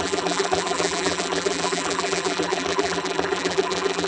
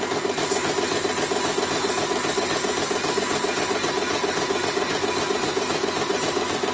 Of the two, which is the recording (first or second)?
second